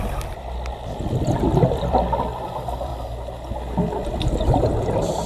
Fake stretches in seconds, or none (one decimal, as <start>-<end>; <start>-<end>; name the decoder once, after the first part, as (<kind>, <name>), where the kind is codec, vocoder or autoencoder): 0.0-2.9 (vocoder, BigVGAN v2); 4.6-5.3